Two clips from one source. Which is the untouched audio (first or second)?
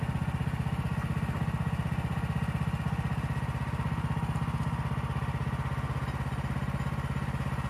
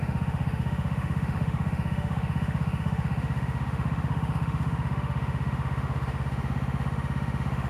first